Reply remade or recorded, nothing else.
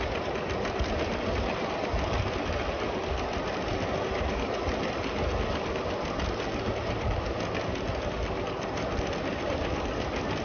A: recorded